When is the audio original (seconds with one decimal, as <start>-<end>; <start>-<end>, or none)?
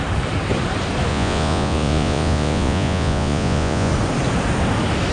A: 0.0-1.1; 3.9-5.1